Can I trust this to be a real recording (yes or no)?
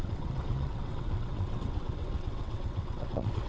no